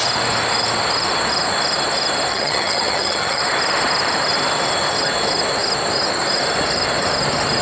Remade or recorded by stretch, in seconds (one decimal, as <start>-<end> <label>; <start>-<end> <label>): 0.0-2.3 recorded; 2.3-3.4 remade; 3.4-7.6 recorded